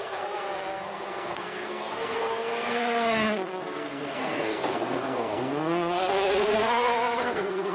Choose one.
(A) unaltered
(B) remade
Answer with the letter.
B